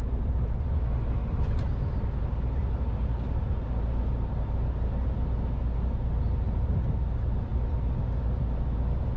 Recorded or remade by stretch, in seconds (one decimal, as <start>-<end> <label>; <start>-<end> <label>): 0.0-9.2 recorded